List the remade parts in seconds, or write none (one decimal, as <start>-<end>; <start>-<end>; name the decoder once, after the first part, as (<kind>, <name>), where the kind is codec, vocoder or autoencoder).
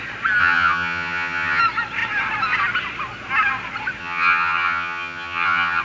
0.4-1.6 (vocoder, HiFi-GAN); 4.0-5.8